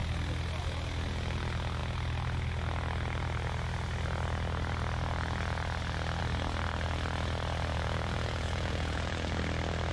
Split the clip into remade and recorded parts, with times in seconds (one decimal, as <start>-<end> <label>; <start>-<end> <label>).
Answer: 0.0-7.7 recorded; 7.7-9.4 remade; 9.4-9.9 recorded